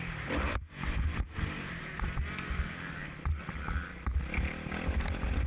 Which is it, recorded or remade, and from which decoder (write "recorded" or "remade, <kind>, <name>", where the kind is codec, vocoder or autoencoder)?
recorded